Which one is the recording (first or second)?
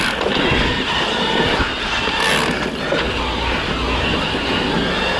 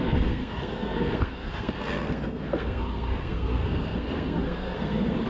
first